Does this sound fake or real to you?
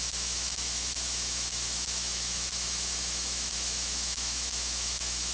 fake